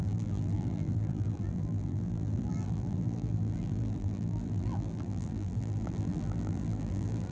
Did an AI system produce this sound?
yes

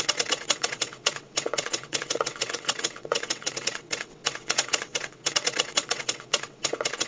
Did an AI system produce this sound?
yes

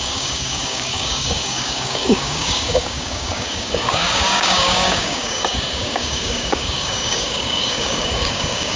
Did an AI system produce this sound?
yes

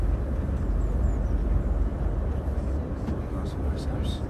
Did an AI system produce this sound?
yes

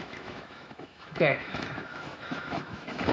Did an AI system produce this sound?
yes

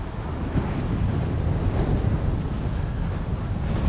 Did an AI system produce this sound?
no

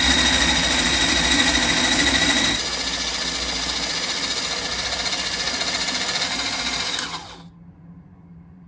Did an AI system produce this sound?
no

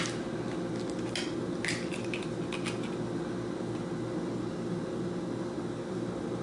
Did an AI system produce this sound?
no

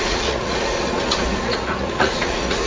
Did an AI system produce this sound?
yes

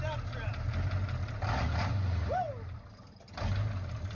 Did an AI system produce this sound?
no